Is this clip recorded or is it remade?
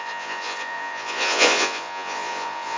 remade